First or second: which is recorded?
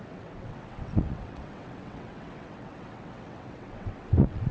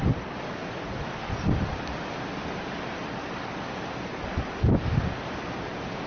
second